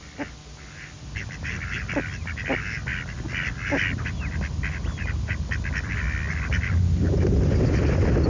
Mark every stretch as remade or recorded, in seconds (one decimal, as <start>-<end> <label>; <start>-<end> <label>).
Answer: 0.0-8.3 recorded